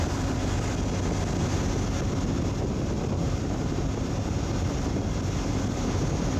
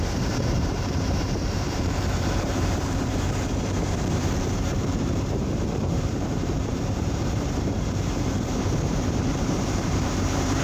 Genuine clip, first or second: first